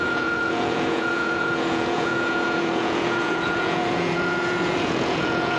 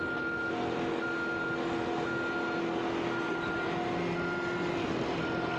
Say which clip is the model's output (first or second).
first